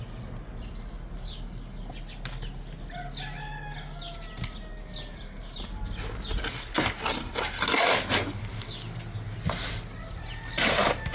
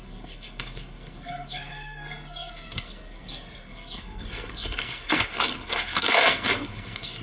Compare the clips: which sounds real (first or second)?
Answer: first